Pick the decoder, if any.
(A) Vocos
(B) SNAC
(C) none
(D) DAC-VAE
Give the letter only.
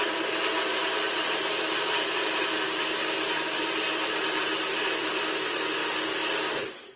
C